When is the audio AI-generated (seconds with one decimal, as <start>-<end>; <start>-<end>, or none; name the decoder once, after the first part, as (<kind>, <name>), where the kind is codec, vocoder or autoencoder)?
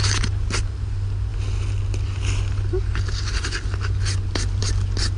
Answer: none